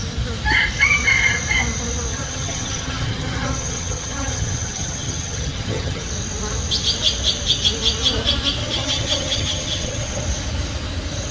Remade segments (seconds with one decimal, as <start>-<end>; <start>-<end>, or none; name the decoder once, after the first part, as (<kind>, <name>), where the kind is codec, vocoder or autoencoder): 2.1-6.1 (vocoder, HiFi-GAN); 8.6-10.2